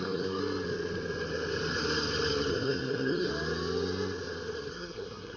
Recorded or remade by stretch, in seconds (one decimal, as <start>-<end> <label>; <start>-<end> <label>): 0.0-0.4 remade; 0.4-2.5 recorded; 2.5-3.3 remade; 3.3-4.7 recorded; 4.7-5.4 remade